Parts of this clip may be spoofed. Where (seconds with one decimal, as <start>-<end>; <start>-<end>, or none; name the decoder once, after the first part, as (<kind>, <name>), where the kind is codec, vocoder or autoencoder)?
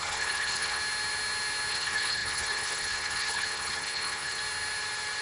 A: 0.0-0.8 (codec, HILCodec); 1.7-4.4